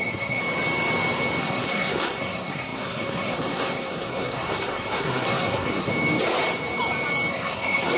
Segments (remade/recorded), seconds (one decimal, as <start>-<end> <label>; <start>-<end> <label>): 0.0-0.4 remade; 0.4-1.4 recorded; 1.4-5.9 remade; 5.9-7.3 recorded; 7.3-8.0 remade